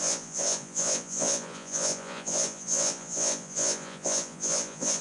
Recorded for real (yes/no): no